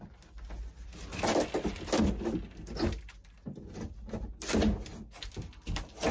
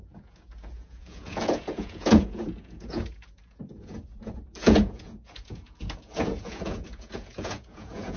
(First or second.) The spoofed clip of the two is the second